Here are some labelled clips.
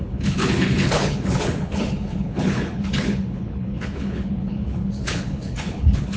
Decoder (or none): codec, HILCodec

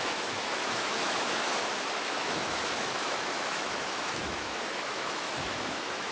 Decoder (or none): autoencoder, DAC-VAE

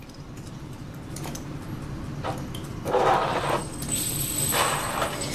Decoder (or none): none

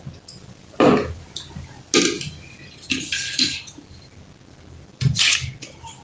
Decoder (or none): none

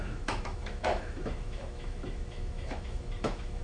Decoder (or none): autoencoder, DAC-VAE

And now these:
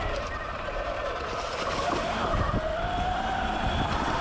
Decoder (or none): none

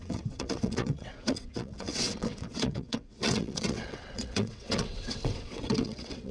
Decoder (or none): vocoder, WaveNeXt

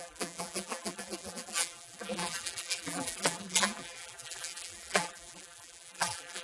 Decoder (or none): vocoder, BigVGAN v2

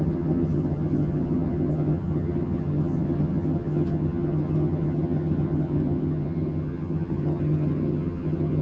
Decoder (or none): vocoder, HiFi-GAN